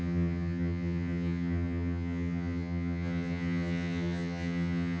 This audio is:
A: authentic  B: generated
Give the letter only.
B